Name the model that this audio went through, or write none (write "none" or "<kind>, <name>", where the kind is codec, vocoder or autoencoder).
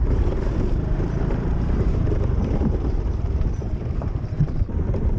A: vocoder, BigVGAN v2